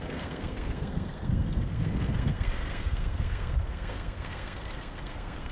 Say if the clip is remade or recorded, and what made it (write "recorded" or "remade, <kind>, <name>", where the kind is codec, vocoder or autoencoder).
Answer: remade, codec, SNAC